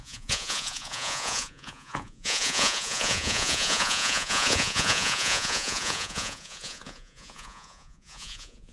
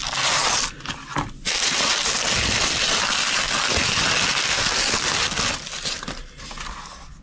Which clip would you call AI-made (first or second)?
first